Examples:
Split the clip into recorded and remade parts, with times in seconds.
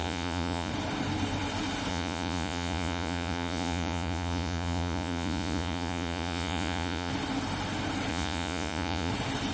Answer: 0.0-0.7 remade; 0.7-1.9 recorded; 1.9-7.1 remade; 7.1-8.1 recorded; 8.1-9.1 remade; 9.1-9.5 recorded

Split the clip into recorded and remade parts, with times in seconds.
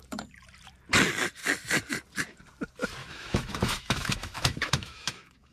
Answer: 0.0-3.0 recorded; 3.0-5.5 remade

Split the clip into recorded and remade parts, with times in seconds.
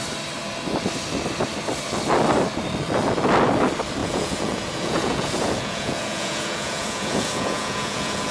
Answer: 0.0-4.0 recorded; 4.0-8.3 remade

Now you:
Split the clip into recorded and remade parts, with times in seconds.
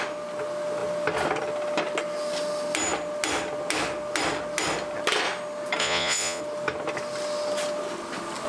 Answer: 0.0-5.8 recorded; 5.8-6.4 remade; 6.4-8.5 recorded